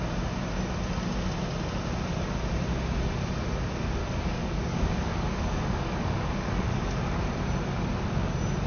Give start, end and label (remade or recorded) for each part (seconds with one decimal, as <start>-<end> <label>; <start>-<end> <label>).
0.0-4.0 recorded; 4.0-7.0 remade; 7.0-8.7 recorded